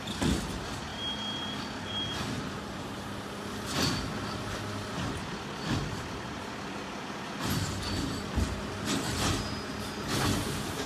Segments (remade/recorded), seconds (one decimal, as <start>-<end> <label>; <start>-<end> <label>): 0.0-10.9 recorded